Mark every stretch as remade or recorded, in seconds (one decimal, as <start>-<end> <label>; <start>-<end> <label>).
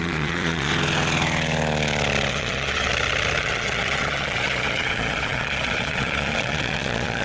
0.0-0.7 remade; 0.7-2.3 recorded; 2.3-2.9 remade; 2.9-3.4 recorded; 3.4-7.2 remade